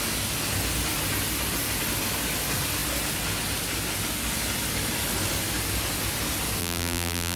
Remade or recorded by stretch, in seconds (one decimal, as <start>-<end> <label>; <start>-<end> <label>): 0.0-6.6 recorded; 6.6-7.4 remade